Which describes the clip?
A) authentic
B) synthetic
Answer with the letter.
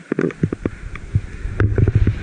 A